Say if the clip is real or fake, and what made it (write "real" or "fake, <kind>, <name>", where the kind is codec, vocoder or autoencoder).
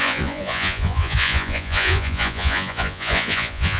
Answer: fake, vocoder, Vocos